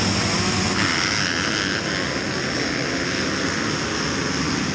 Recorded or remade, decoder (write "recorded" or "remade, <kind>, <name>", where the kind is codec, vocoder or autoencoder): recorded